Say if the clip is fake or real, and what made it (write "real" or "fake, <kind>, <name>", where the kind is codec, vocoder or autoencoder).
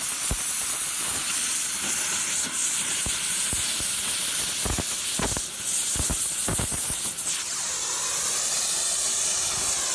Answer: real